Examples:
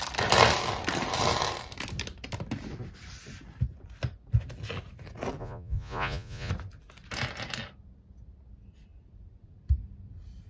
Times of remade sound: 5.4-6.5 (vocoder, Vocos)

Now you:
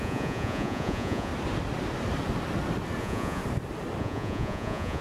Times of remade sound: 0.0-1.3 (vocoder, Vocos); 3.0-3.4; 4.0-5.0

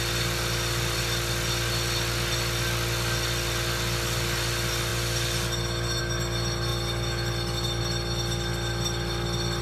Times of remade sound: none

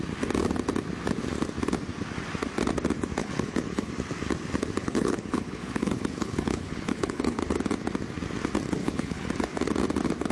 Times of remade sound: 3.2-3.9 (codec, HILCodec); 4.8-7.4; 8.8-9.3

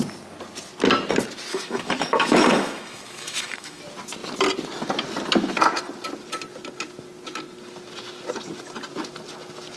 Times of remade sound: 1.5-3.8 (autoencoder, DAC-VAE)

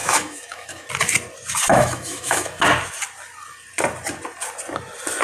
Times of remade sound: 0.0-0.9 (autoencoder, DAC-VAE); 1.7-2.6